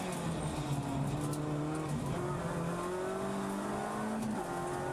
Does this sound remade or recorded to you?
recorded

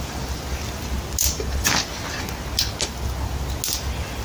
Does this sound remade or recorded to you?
recorded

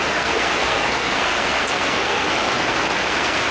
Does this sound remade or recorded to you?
remade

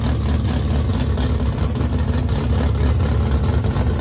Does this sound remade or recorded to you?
recorded